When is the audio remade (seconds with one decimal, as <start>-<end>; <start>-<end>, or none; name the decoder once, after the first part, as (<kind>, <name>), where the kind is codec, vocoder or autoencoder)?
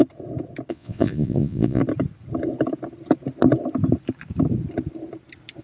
0.7-1.8 (vocoder, Vocos)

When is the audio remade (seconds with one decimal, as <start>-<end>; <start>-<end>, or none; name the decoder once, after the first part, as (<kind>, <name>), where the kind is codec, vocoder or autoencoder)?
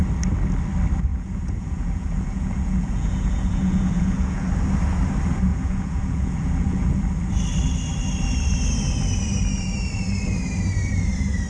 1.1-4.5 (vocoder, Vocos); 5.5-7.0